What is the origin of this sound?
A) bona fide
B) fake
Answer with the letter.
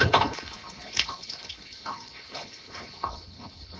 B